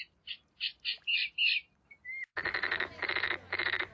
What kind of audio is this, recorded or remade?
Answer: recorded